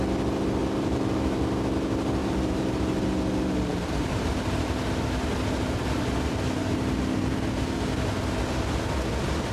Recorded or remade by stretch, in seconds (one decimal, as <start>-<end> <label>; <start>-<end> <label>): 0.0-0.6 recorded; 0.6-1.4 remade; 1.4-2.2 recorded; 2.2-3.0 remade; 3.0-3.7 recorded; 3.7-4.3 remade; 4.3-9.5 recorded